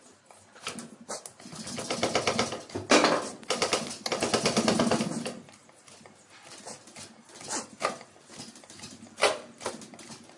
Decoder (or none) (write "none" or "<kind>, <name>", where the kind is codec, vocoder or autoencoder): none